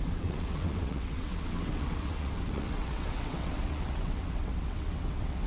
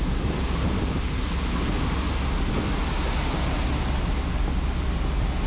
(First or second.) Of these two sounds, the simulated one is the first